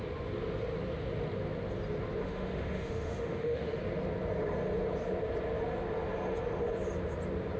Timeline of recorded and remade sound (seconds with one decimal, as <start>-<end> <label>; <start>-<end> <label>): 0.0-2.2 recorded; 2.2-3.8 remade; 3.8-7.6 recorded